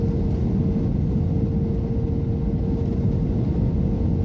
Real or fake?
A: real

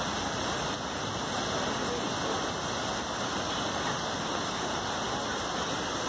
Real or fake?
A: real